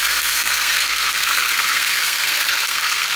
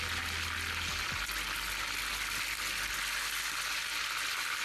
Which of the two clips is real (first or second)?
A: second